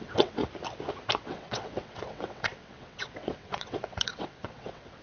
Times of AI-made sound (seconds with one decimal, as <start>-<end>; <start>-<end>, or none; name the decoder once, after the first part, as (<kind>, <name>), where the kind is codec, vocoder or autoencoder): 0.0-0.4 (vocoder, WaveNeXt); 1.2-5.0